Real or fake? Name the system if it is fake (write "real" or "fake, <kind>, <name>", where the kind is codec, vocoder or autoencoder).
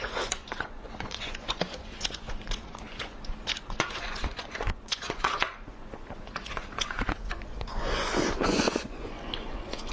fake, vocoder, Vocos